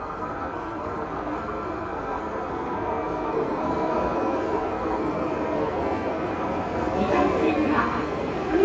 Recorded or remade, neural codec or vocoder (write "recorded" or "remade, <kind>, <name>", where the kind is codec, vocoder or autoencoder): remade, codec, SNAC